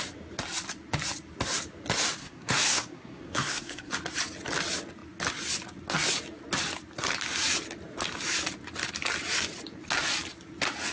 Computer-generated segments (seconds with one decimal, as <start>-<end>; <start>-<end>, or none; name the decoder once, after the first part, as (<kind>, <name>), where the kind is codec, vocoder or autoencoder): 2.2-3.9 (codec, SNAC)

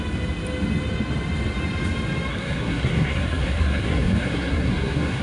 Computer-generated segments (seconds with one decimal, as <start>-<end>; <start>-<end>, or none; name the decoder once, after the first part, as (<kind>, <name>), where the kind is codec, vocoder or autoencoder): 2.3-5.2 (codec, SNAC)

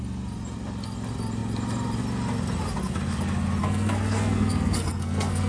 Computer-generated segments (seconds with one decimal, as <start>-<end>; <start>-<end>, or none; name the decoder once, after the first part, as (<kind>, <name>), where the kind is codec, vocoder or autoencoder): 3.6-5.5 (codec, SNAC)

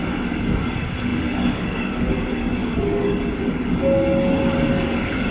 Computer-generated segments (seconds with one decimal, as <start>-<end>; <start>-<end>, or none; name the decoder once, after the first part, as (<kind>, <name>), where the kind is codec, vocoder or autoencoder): 0.0-5.3 (codec, DAC)

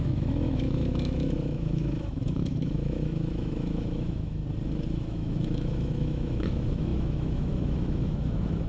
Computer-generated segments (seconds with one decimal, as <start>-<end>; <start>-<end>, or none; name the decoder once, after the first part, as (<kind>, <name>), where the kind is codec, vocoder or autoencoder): 0.0-4.4 (autoencoder, DAC-VAE); 4.9-8.7

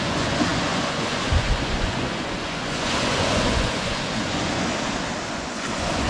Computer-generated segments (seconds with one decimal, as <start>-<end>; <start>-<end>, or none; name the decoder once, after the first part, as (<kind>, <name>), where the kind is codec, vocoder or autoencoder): 0.0-4.7 (vocoder, Vocos); 5.3-6.1

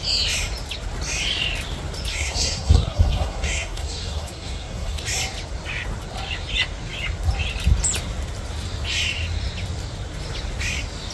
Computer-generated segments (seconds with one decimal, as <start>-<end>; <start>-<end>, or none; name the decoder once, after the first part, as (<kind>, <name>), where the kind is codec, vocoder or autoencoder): 2.1-5.0 (codec, SNAC)

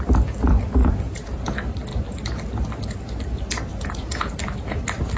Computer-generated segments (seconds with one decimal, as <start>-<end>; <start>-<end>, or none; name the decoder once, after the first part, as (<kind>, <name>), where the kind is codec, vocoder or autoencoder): 0.8-1.5 (vocoder, Vocos); 3.7-4.3